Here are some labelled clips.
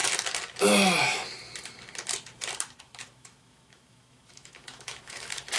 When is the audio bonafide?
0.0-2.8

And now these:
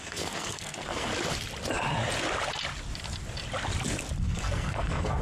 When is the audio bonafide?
1.1-4.2

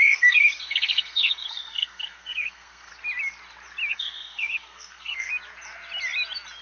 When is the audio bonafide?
2.9-3.9; 5.3-6.6

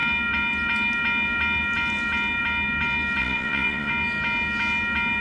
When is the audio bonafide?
0.0-3.2; 3.9-5.2

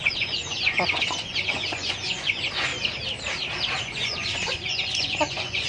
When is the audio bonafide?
2.7-3.8